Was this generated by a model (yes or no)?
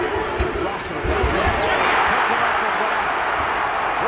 no